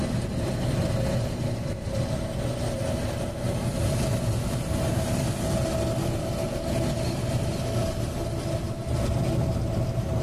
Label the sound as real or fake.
real